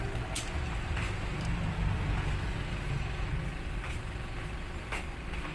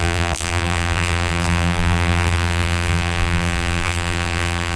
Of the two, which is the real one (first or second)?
first